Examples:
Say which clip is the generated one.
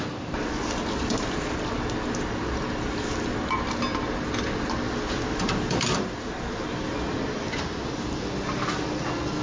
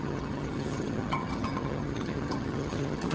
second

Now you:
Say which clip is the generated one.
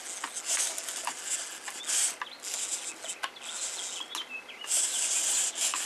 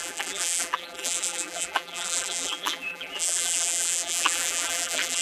second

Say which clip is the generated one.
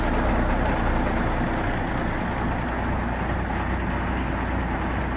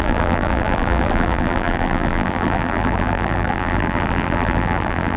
second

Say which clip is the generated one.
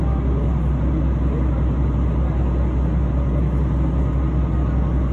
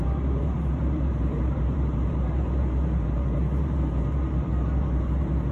second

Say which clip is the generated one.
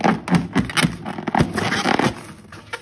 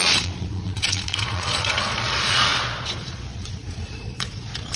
second